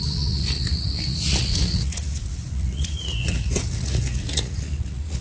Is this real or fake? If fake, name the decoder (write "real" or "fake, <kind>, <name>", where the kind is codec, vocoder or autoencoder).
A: fake, vocoder, Vocos